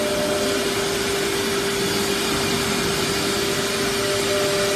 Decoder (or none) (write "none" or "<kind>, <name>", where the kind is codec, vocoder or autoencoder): none